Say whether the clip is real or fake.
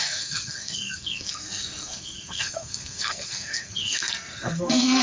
fake